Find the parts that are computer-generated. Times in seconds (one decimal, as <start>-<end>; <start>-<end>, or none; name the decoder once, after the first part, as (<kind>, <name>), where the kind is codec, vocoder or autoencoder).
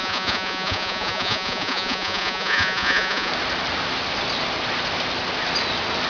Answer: 0.0-3.3 (vocoder, Vocos)